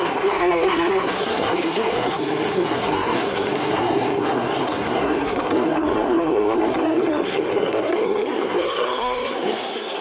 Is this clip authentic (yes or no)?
no